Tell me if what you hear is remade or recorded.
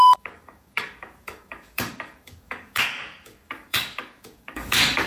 remade